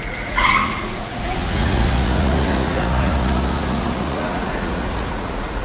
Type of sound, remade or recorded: remade